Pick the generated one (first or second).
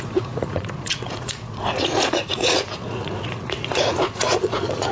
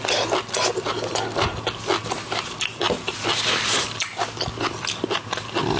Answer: first